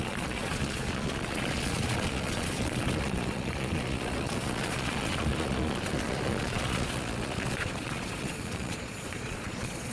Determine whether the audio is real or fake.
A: fake